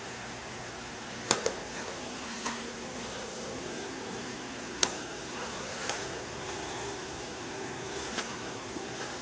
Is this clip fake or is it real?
fake